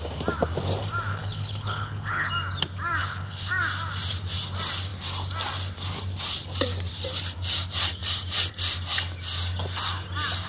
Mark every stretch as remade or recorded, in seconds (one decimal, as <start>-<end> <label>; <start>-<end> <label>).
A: 0.0-1.1 recorded; 1.1-2.3 remade; 2.3-3.0 recorded; 3.0-3.5 remade; 3.5-10.5 recorded